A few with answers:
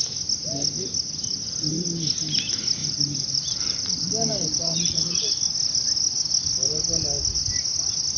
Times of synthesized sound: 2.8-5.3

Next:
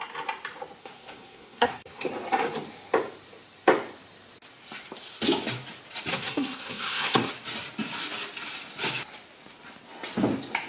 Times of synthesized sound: 0.8-2.1; 6.1-7.3

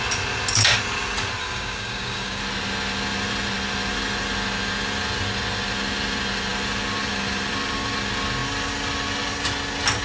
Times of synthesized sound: 1.4-2.4

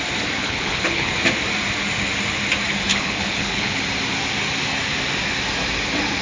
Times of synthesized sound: 0.4-1.1; 2.9-3.8

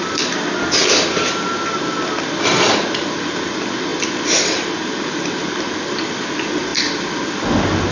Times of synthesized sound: none

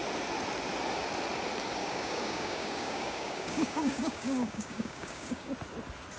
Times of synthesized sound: 1.8-5.5

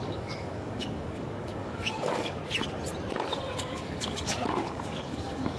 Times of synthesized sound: 0.0-2.4; 3.6-5.6